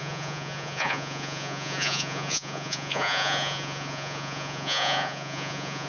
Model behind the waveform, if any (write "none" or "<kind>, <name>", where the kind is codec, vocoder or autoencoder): vocoder, Vocos